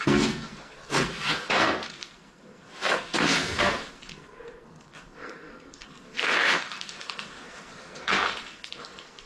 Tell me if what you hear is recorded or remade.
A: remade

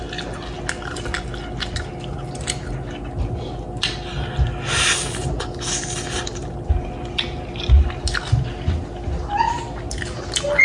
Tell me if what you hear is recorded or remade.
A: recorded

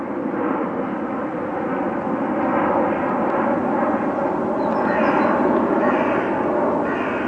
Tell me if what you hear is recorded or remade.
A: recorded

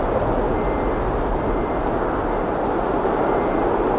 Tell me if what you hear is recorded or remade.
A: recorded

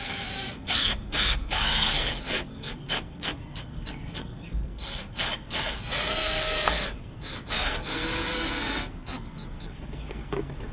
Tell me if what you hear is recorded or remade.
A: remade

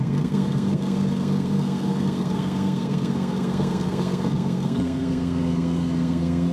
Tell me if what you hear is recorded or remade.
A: remade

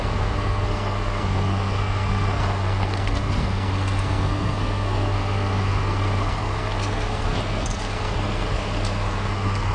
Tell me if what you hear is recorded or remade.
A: remade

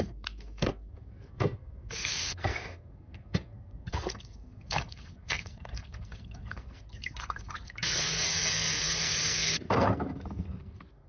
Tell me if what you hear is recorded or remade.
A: remade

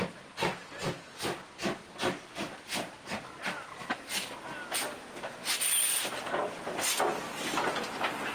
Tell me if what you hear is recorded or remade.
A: recorded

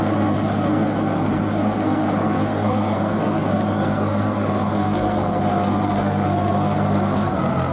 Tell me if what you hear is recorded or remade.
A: remade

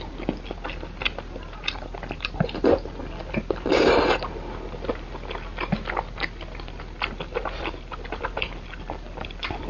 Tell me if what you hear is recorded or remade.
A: recorded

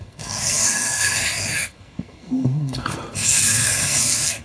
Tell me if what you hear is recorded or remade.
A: remade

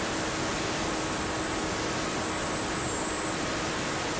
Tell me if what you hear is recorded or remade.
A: recorded